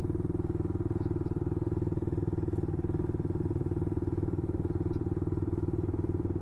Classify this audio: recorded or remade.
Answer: recorded